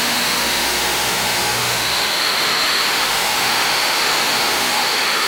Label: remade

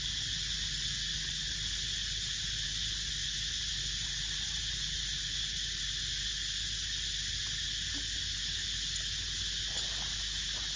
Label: recorded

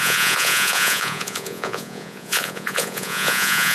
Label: remade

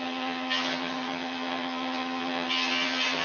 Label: remade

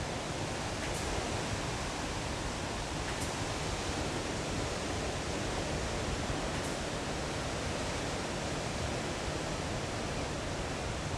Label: recorded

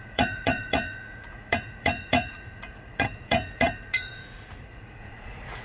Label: remade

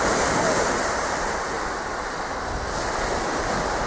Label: recorded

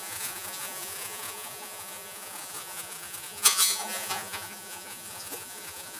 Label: remade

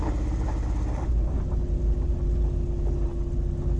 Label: recorded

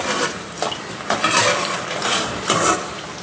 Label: remade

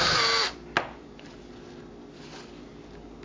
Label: recorded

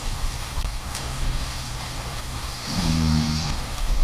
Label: remade